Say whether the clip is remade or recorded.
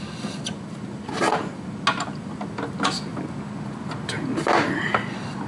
recorded